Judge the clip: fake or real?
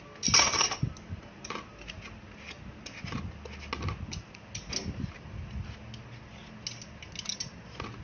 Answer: real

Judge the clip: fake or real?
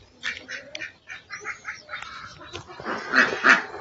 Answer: real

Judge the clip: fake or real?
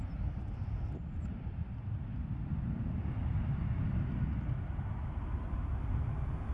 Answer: real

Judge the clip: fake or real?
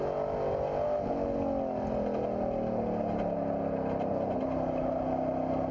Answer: real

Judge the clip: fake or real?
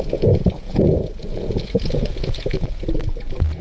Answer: fake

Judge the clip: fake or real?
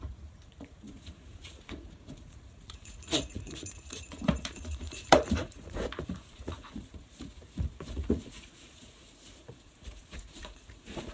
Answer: fake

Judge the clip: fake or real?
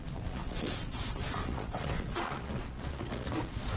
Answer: fake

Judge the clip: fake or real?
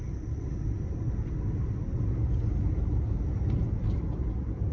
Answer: real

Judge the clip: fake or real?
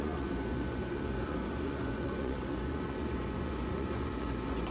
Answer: fake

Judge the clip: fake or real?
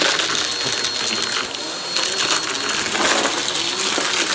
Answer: real